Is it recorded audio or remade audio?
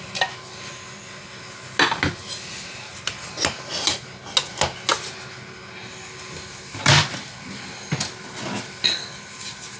recorded